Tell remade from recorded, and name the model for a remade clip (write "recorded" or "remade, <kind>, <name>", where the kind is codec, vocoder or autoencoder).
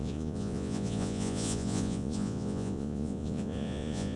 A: remade, vocoder, Vocos